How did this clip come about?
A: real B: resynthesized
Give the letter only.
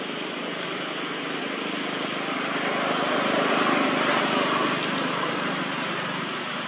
A